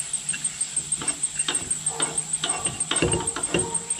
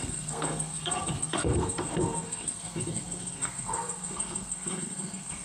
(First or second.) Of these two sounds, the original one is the first